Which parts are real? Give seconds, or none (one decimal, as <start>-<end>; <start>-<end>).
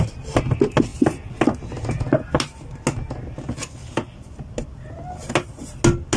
0.0-6.2